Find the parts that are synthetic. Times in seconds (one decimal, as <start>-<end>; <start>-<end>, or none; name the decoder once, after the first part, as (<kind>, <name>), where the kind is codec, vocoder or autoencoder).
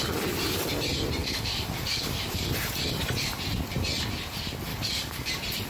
1.2-2.5 (codec, DAC); 4.7-5.3